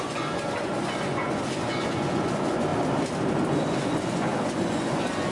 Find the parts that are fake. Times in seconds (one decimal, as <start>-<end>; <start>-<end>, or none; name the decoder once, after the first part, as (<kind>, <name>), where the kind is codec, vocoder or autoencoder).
0.0-2.7 (vocoder, Vocos); 3.5-5.3